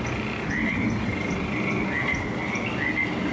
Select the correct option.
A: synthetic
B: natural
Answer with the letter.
B